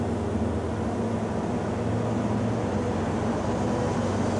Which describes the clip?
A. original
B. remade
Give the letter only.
A